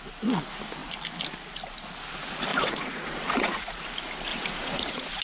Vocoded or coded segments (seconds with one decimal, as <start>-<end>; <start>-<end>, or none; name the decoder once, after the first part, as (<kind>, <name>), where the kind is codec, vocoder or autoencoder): 2.5-3.8 (vocoder, Vocos); 4.3-5.2